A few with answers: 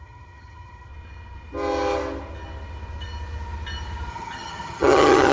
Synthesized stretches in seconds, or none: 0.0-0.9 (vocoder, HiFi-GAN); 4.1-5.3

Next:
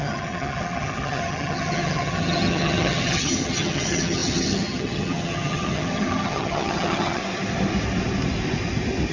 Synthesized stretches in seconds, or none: 0.0-7.2 (vocoder, HiFi-GAN)

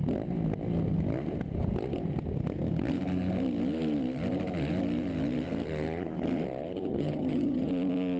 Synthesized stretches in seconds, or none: 6.9-7.7 (vocoder, HiFi-GAN)

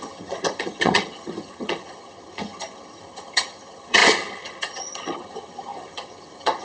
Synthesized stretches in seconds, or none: 0.0-6.6 (vocoder, HiFi-GAN)

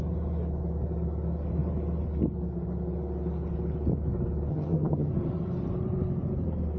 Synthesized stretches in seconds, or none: 4.5-5.1 (vocoder, HiFi-GAN)

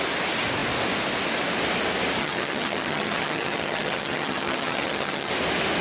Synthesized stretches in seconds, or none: 2.2-5.3 (vocoder, HiFi-GAN)

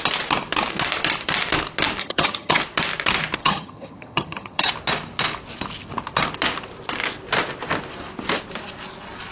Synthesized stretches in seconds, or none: 2.0-2.6 (vocoder, HiFi-GAN); 3.4-4.7